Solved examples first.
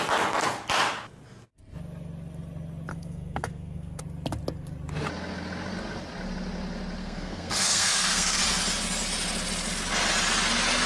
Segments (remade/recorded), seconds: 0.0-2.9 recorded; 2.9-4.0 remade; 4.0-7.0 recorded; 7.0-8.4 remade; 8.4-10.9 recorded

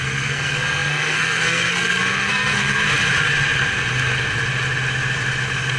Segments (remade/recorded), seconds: 0.0-2.8 remade; 2.8-5.8 recorded

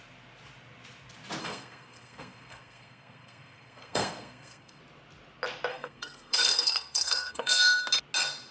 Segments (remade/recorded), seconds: 0.0-1.4 recorded; 1.4-4.8 remade; 4.8-5.7 recorded; 5.7-7.8 remade; 7.8-8.5 recorded

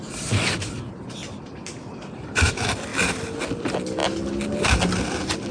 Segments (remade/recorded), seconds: 0.0-5.5 recorded

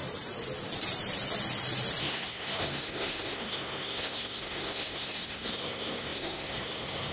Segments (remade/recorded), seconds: 0.0-2.0 recorded; 2.0-7.1 remade